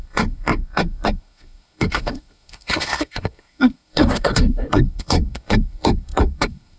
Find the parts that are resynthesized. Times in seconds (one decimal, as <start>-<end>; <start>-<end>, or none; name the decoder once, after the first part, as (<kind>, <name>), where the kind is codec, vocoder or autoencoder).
0.0-6.8 (codec, SNAC)